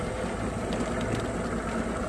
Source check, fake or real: real